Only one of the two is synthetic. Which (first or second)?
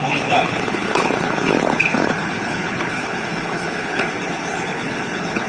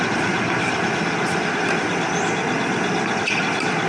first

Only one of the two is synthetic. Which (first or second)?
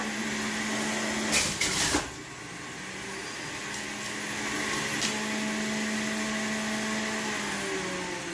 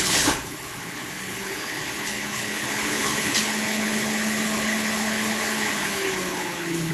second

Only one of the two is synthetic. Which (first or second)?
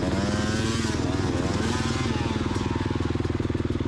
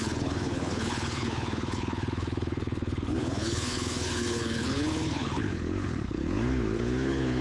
second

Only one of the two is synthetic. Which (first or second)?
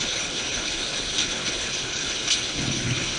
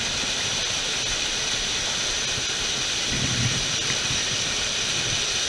first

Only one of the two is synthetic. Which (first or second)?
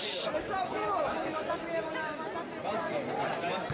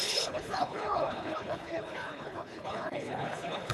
second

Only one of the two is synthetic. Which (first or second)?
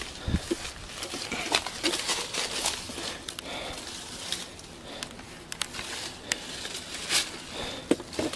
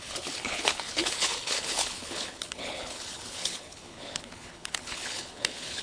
second